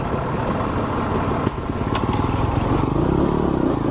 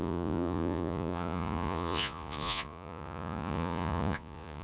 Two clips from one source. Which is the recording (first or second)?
first